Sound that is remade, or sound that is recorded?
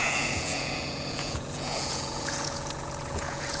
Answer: remade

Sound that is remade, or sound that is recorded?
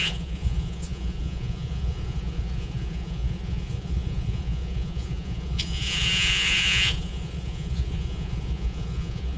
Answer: remade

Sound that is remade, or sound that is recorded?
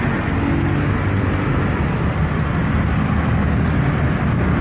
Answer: recorded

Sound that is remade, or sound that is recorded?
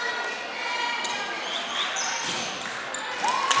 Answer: recorded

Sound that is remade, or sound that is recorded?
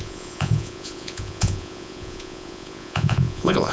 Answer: remade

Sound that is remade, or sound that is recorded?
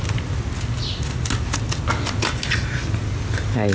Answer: recorded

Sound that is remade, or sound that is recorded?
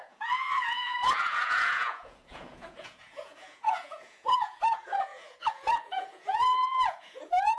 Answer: remade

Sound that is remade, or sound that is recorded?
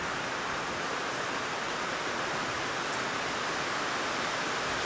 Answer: recorded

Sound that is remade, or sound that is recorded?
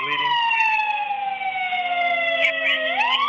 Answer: recorded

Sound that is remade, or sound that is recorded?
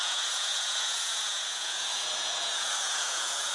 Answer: remade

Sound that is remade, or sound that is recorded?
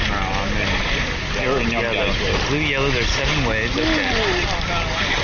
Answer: recorded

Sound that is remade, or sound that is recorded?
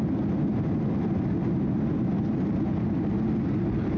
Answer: recorded